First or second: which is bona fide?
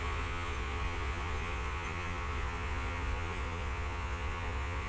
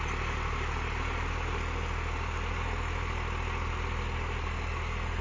second